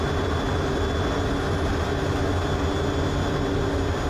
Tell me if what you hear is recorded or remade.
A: recorded